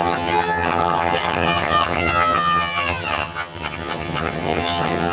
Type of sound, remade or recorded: remade